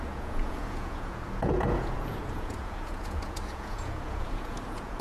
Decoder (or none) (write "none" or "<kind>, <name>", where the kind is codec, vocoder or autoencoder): vocoder, Vocos